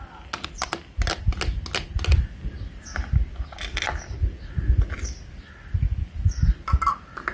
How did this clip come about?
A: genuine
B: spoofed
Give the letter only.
A